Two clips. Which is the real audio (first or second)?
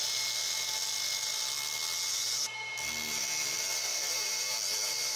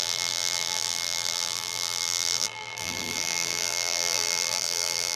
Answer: first